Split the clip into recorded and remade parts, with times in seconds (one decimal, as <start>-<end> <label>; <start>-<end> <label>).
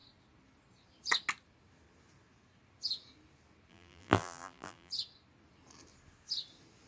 0.0-3.7 recorded; 3.7-4.9 remade; 4.9-6.9 recorded